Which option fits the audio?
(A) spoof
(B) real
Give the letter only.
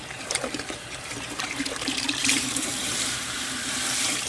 A